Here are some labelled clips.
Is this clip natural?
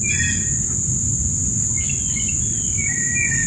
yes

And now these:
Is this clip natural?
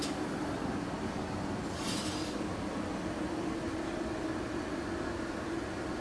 yes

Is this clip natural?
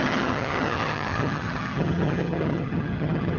no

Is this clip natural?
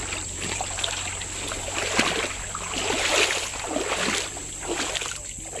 yes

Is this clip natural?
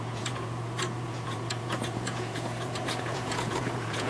no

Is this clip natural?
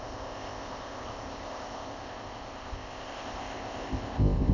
no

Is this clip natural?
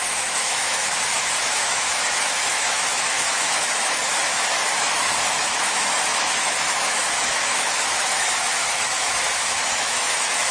no